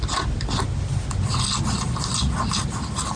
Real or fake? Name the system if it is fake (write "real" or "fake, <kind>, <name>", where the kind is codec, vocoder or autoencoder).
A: real